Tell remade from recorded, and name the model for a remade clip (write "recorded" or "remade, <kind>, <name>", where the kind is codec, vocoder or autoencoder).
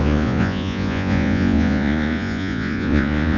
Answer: remade, vocoder, Vocos